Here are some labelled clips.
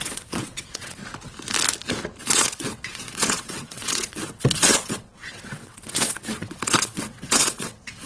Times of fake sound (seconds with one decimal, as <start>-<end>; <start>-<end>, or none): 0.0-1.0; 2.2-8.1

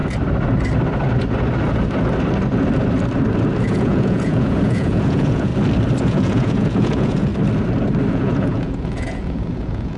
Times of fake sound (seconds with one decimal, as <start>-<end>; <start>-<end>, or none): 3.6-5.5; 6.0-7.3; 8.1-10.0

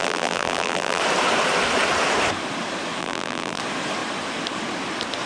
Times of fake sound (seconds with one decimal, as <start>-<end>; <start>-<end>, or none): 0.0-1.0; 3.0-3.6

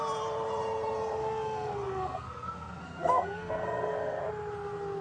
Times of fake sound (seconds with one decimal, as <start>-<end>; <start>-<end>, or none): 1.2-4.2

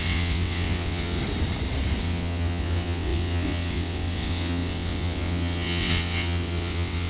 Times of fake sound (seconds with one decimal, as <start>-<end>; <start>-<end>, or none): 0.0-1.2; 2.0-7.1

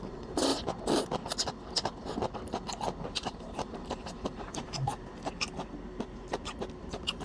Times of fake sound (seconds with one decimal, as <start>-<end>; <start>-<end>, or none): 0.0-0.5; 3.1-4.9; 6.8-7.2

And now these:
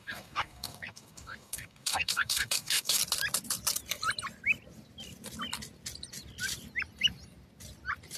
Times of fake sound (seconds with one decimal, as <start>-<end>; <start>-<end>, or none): 0.0-3.0